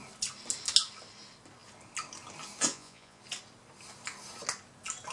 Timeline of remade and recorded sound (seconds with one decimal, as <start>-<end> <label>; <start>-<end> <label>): 0.0-2.7 recorded; 2.7-3.2 remade; 3.2-5.1 recorded